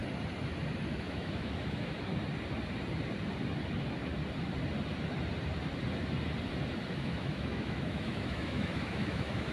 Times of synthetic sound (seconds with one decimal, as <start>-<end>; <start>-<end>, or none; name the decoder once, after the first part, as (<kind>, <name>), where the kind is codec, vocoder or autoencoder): 1.0-2.1 (autoencoder, DAC-VAE); 6.9-9.5